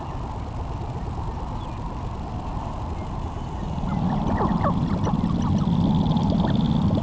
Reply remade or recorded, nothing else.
recorded